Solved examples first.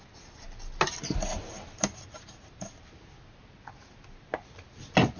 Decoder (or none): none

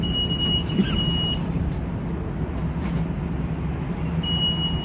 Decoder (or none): none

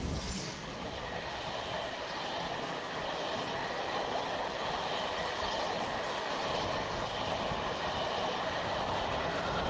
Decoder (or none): none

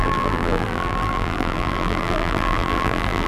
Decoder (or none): vocoder, BigVGAN v2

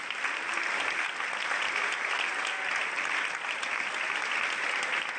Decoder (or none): none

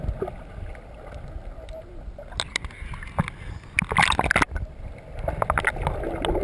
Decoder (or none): none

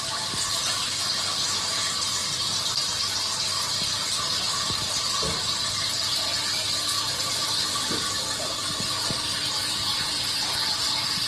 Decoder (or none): vocoder, BigVGAN v2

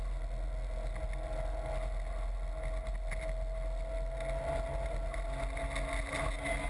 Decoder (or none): none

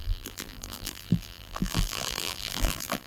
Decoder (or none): vocoder, BigVGAN v2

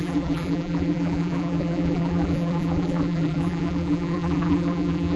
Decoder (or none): vocoder, BigVGAN v2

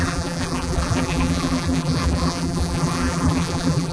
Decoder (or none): vocoder, BigVGAN v2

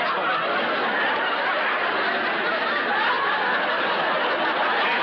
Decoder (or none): none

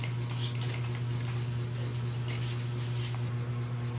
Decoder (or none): none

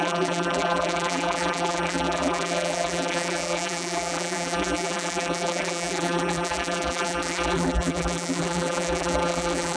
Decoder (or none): vocoder, BigVGAN v2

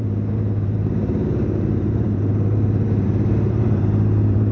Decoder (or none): vocoder, BigVGAN v2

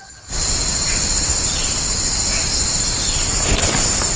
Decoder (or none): none